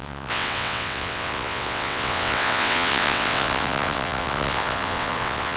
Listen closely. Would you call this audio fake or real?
fake